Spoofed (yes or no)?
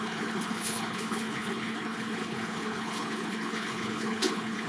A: yes